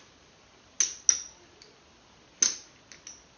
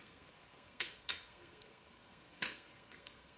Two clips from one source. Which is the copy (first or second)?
second